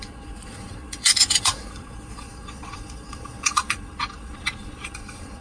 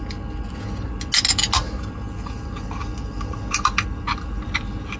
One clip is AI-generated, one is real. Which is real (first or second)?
second